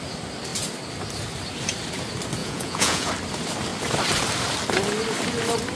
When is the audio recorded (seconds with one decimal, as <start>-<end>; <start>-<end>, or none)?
0.0-2.4; 3.1-5.7